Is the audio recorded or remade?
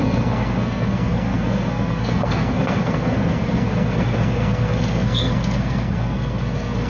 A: remade